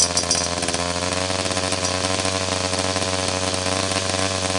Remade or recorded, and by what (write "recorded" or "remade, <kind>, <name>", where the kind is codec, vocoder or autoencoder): recorded